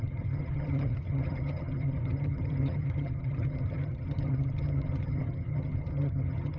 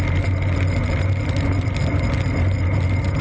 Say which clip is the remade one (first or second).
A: first